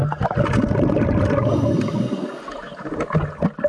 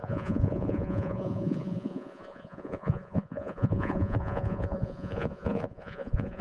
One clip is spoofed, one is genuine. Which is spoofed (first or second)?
second